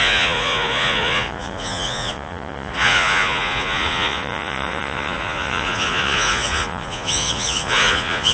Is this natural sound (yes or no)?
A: no